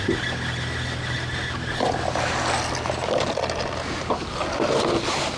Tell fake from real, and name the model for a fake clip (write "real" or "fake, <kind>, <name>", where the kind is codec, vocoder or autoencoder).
real